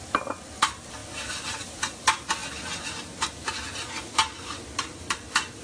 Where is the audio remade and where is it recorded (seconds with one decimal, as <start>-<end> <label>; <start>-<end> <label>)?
0.0-1.0 recorded; 1.0-1.8 remade; 1.8-5.6 recorded